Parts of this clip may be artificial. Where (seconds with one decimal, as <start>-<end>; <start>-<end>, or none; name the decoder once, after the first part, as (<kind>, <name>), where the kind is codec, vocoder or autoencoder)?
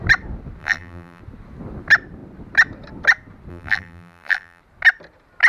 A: 0.6-1.2 (vocoder, BigVGAN v2); 3.5-4.6